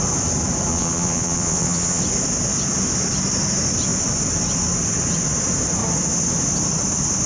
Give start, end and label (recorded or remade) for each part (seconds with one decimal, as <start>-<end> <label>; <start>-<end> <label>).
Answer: 0.0-0.7 recorded; 0.7-2.0 remade; 2.0-7.3 recorded